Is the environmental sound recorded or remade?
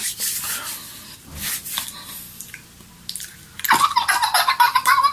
recorded